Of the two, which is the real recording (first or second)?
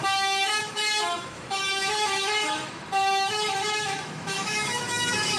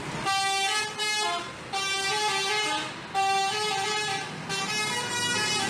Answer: second